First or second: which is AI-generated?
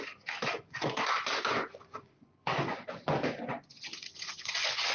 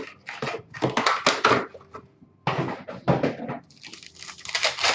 first